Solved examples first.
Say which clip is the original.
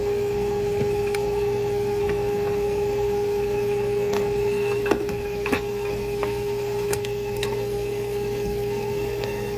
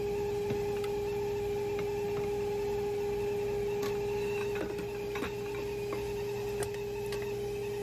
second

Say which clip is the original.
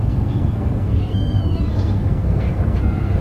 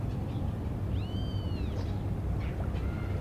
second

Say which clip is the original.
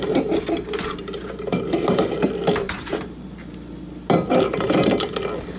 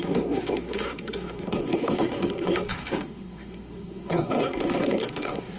first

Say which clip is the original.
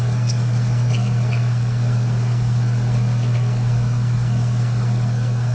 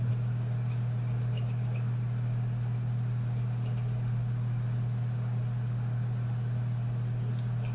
second